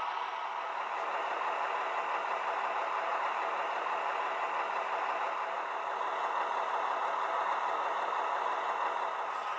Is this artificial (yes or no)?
no